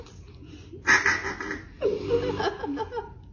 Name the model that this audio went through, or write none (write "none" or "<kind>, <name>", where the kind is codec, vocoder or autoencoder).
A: none